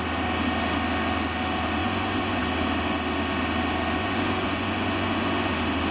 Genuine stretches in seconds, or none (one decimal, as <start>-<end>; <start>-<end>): 0.0-1.8; 2.4-4.0; 5.5-5.9